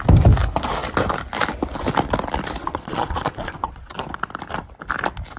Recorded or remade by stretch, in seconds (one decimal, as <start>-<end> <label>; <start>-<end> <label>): 0.0-2.6 recorded; 2.6-3.9 remade; 3.9-5.4 recorded